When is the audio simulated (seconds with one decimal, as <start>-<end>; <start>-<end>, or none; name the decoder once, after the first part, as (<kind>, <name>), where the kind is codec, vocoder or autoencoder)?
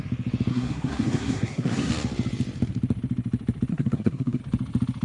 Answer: 0.5-1.9 (codec, SNAC); 3.7-4.4